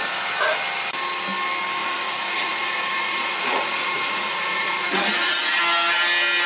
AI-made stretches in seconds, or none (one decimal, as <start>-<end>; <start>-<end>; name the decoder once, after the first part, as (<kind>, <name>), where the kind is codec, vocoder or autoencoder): 1.8-5.6 (vocoder, Vocos)